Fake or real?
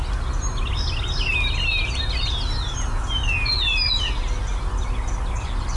real